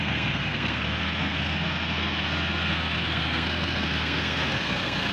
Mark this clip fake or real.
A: fake